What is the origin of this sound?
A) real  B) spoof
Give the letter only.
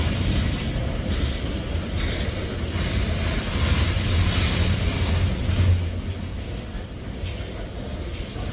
A